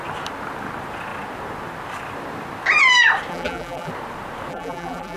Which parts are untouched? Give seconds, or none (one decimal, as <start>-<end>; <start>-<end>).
0.0-3.3; 3.9-4.5